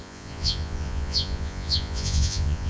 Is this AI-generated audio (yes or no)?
yes